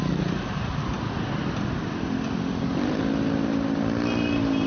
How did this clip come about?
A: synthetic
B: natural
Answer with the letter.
B